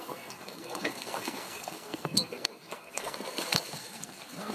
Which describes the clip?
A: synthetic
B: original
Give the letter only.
A